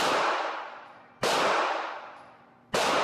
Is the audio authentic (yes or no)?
yes